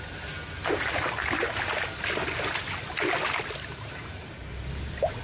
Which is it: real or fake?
real